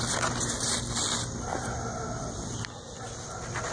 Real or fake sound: real